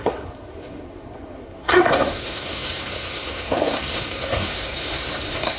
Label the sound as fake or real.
fake